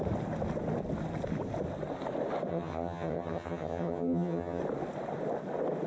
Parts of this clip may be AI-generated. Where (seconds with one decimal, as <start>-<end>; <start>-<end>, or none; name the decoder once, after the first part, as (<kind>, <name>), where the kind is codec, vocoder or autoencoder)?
2.5-4.6 (vocoder, HiFi-GAN)